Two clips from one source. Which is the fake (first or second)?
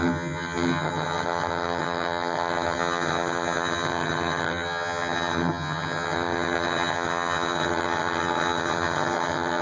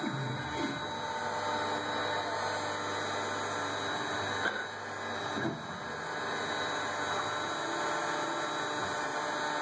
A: first